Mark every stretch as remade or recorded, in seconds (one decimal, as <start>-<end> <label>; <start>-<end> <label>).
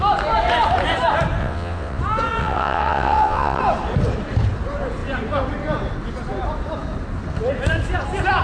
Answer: 0.0-1.4 recorded; 1.4-2.0 remade; 2.0-2.4 recorded; 2.4-3.6 remade; 3.6-8.4 recorded